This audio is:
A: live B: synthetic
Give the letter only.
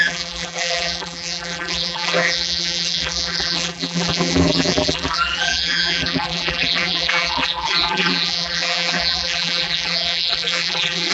B